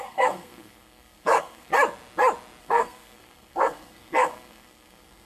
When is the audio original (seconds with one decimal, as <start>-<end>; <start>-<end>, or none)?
1.7-2.6

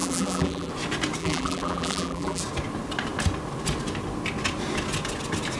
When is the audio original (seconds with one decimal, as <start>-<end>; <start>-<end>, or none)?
0.7-1.2; 2.4-5.6

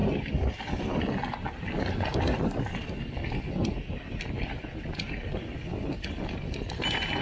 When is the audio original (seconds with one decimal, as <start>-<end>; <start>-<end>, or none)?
0.0-7.2

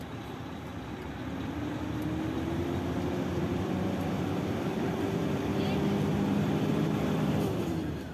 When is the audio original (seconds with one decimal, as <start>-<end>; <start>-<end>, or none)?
0.7-3.3; 5.2-6.1

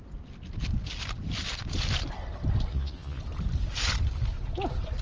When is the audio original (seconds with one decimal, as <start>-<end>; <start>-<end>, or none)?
0.0-2.7; 3.2-5.0

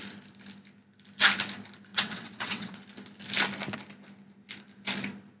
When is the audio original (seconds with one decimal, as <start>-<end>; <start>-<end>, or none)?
0.0-1.9; 2.8-5.4

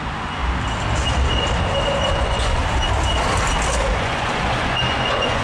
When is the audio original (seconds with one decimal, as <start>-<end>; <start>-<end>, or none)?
0.4-2.1; 2.6-3.9